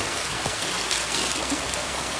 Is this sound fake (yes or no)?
yes